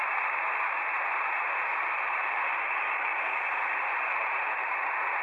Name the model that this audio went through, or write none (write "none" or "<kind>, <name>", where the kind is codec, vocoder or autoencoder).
vocoder, BigVGAN v2